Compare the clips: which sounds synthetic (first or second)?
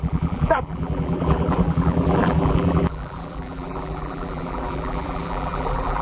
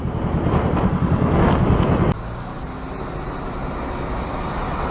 first